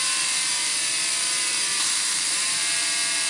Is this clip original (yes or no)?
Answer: no